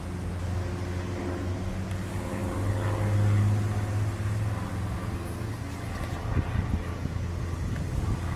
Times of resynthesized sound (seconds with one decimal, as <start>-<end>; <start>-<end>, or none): none